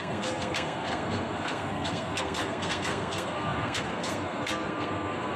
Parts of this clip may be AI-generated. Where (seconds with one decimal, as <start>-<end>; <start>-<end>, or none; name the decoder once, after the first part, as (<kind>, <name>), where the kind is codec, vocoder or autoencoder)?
0.0-5.4 (codec, SNAC)